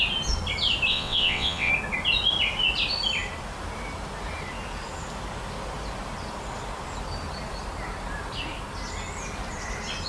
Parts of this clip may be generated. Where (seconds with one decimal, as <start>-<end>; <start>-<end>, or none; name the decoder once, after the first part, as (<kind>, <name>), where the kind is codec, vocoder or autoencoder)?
0.9-1.7 (vocoder, WaveNeXt)